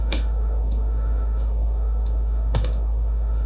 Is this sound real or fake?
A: fake